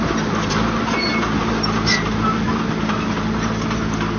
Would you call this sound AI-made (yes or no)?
no